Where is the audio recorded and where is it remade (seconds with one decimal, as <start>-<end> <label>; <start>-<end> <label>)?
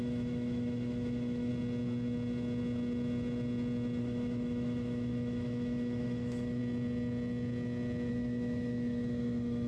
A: 0.0-1.5 remade; 1.5-4.0 recorded; 4.0-6.6 remade; 6.6-8.1 recorded; 8.1-9.7 remade